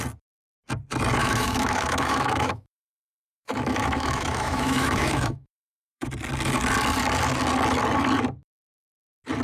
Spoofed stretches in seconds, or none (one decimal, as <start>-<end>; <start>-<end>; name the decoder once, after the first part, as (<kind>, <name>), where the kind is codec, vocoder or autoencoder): 1.2-6.1 (autoencoder, DAC-VAE)